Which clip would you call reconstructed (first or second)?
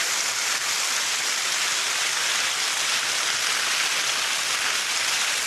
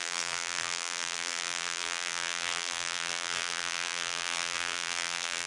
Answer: second